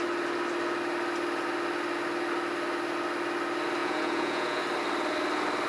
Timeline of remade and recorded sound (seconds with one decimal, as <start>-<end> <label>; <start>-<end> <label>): 0.0-3.8 recorded; 3.8-4.6 remade; 4.6-5.7 recorded